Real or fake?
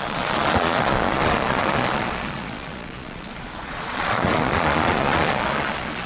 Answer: fake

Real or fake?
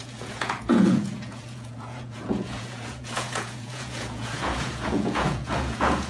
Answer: fake